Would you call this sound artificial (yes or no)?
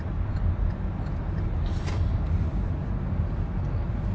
no